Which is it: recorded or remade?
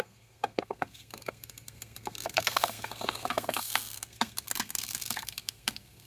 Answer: remade